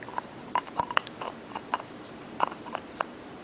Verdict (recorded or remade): remade